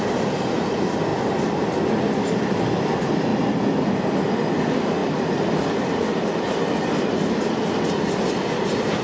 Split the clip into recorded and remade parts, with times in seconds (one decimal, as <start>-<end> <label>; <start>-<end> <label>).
0.0-9.0 recorded